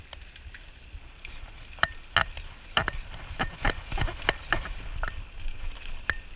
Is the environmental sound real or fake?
real